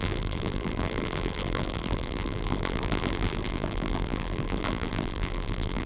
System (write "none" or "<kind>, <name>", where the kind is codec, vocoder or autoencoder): vocoder, BigVGAN v2